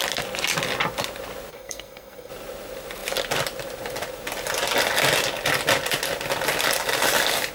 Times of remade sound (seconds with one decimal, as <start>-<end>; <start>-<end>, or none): 1.5-2.3